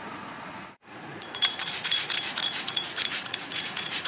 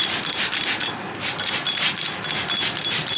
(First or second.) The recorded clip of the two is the second